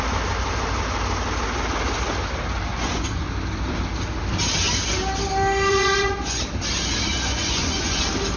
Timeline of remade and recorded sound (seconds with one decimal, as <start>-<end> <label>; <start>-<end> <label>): 0.0-2.7 recorded; 2.7-3.3 remade; 3.3-5.7 recorded; 5.7-6.4 remade; 6.4-7.1 recorded; 7.1-8.0 remade; 8.0-8.4 recorded